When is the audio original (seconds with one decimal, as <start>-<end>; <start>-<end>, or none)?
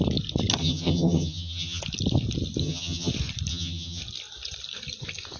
0.0-0.6; 1.8-2.6; 3.1-3.5; 4.0-5.4